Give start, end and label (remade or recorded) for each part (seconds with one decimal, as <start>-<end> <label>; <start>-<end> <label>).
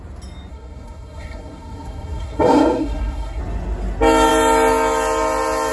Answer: 0.0-0.5 recorded; 0.5-3.4 remade; 3.4-5.7 recorded